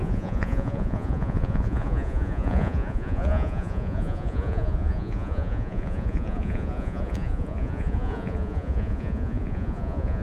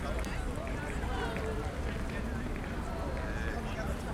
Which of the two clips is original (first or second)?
second